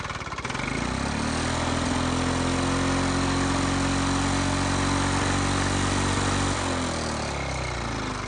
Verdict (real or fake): real